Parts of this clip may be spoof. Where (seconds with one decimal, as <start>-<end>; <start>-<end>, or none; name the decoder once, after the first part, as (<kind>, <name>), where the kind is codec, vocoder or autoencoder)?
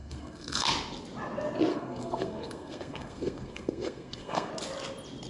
0.0-0.7 (codec, SNAC); 1.7-4.5